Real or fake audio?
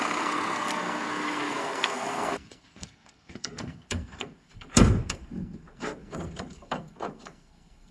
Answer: fake